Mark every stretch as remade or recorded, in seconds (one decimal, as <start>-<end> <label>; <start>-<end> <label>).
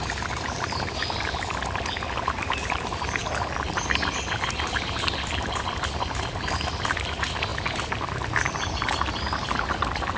0.0-10.2 recorded